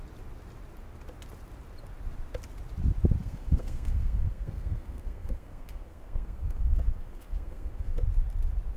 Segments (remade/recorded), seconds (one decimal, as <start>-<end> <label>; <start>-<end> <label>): 0.0-3.2 recorded; 3.2-8.0 remade; 8.0-8.8 recorded